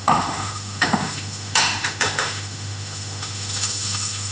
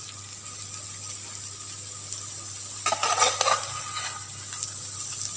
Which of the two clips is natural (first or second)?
second